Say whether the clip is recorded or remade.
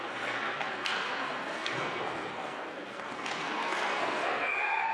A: remade